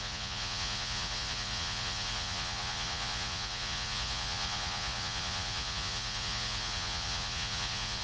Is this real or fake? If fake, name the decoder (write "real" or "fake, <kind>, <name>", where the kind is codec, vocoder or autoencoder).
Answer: fake, vocoder, Vocos